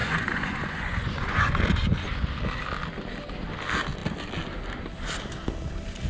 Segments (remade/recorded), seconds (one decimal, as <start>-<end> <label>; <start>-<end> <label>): 0.0-1.6 remade; 1.6-6.1 recorded